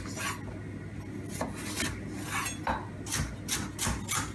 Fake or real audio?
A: real